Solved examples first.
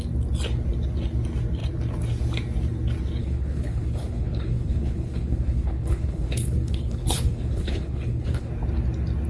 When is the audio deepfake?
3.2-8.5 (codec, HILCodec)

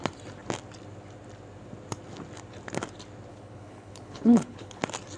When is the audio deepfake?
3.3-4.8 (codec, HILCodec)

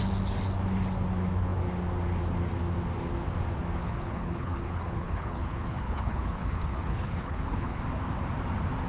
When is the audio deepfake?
3.8-7.8 (codec, HILCodec)

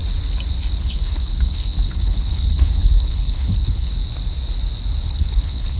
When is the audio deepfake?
0.8-3.9 (codec, HILCodec); 5.0-5.8